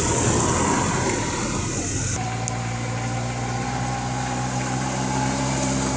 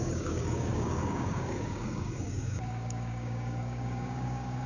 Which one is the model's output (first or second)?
second